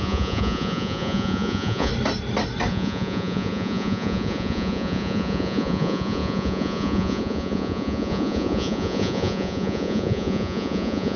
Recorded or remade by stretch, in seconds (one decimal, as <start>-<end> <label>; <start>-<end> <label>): 0.0-1.9 remade; 1.9-2.7 recorded; 2.7-11.2 remade